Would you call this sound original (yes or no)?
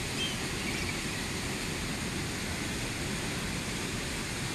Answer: yes